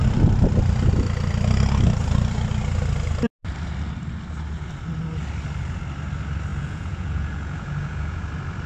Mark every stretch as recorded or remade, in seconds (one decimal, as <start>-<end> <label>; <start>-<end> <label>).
0.0-6.5 recorded; 6.5-8.2 remade; 8.2-8.7 recorded